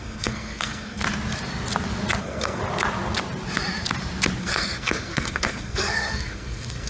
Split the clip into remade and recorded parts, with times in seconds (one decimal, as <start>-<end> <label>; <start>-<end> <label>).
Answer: 0.0-1.0 remade; 1.0-2.2 recorded; 2.2-2.6 remade; 2.6-4.4 recorded; 4.4-6.9 remade